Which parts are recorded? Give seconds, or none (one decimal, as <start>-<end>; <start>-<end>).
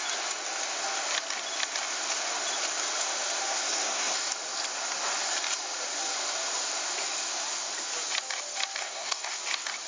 0.0-3.5; 4.3-8.8; 9.4-9.9